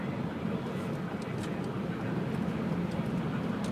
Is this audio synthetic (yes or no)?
no